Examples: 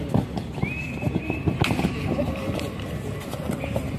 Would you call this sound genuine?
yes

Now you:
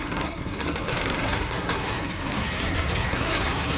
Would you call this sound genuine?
no